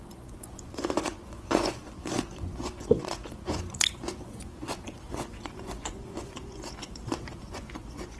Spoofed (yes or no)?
yes